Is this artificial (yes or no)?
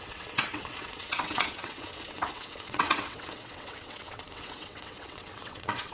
yes